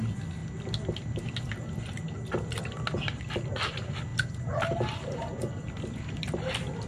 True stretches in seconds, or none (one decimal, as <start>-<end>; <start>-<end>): 0.0-6.9

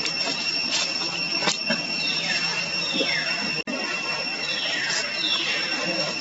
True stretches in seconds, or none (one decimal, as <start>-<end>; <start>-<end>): 0.0-6.2